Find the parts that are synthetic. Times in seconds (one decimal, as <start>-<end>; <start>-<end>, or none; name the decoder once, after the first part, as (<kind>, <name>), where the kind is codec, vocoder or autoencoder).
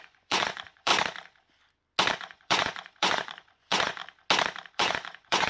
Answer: 0.0-0.9 (vocoder, Vocos); 2.1-4.0; 4.7-5.5